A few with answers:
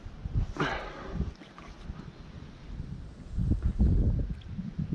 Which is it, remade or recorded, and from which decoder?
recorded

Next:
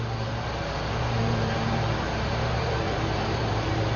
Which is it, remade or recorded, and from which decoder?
remade, vocoder, BigVGAN v2